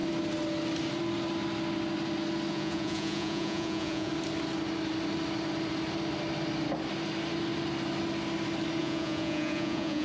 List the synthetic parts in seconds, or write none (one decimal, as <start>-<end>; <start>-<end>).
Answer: 2.5-4.1; 8.8-10.0